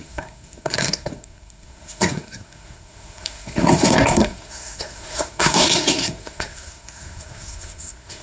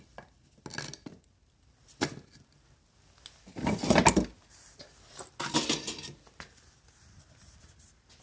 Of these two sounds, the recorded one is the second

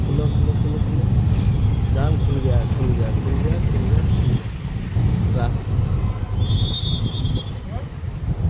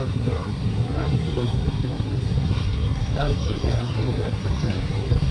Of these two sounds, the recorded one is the first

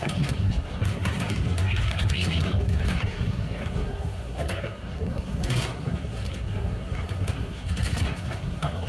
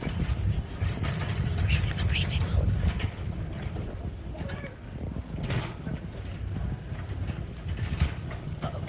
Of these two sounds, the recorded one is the second